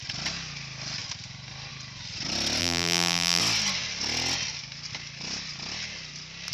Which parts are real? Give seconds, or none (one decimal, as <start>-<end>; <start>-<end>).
0.0-2.6; 3.4-6.5